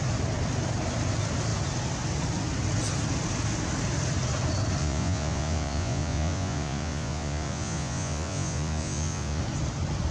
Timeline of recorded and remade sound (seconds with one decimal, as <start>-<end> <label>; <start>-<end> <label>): 0.0-4.8 recorded; 4.8-9.4 remade; 9.4-10.1 recorded